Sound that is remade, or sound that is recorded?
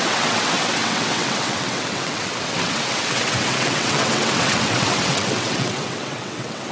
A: remade